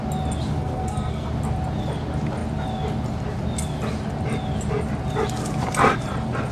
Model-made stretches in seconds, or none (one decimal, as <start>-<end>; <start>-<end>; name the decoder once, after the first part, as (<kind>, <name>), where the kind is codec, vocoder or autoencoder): 0.6-1.3 (codec, SNAC)